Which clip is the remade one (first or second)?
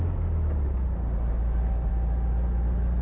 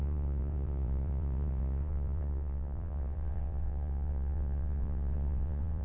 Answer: second